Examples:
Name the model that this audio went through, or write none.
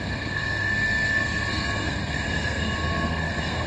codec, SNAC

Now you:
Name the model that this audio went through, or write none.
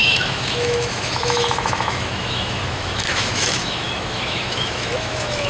autoencoder, DAC-VAE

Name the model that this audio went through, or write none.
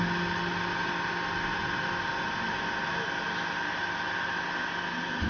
none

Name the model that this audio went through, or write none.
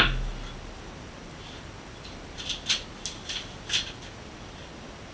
none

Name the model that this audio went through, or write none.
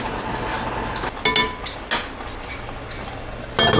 none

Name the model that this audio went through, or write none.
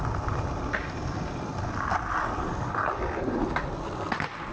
none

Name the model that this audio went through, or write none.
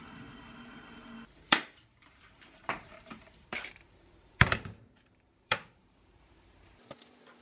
vocoder, BigVGAN v2